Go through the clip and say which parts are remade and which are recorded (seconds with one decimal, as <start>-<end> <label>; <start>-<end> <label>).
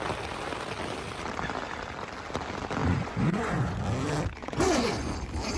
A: 0.0-2.8 recorded; 2.8-3.8 remade; 3.8-4.4 recorded; 4.4-5.1 remade; 5.1-5.6 recorded